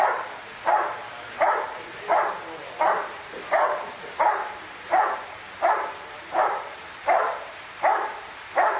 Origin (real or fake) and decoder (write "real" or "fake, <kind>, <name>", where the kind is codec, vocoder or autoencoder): fake, vocoder, BigVGAN v2